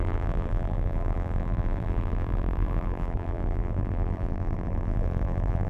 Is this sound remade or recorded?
remade